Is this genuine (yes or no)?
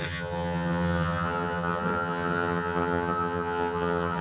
no